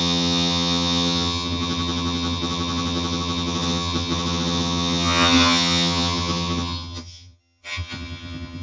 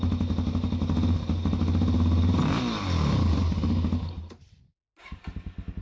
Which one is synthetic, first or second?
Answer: first